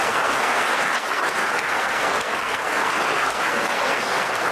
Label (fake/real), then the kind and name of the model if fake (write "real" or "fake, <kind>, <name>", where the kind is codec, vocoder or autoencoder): fake, codec, SNAC